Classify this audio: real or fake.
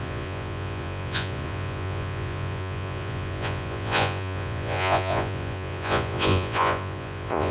fake